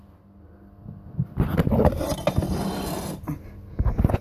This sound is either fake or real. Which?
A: real